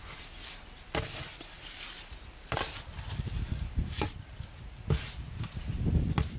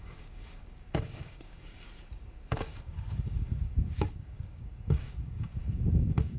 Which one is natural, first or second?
first